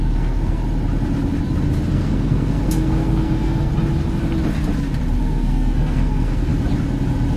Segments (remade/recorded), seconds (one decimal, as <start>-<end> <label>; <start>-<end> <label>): 0.0-0.6 remade; 0.6-1.9 recorded; 1.9-3.7 remade; 3.7-5.2 recorded; 5.2-6.5 remade; 6.5-7.4 recorded